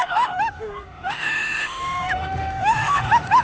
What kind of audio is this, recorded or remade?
remade